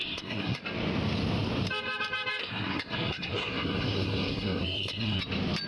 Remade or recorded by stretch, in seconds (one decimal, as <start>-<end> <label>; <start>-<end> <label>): 0.0-0.6 remade; 0.6-2.4 recorded; 2.4-5.2 remade; 5.2-5.7 recorded